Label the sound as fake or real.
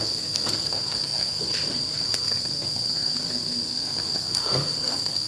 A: fake